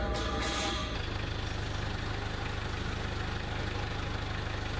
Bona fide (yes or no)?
yes